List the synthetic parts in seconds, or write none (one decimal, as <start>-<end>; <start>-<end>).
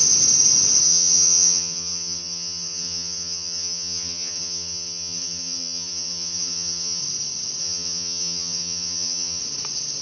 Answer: 0.8-7.0; 7.6-9.4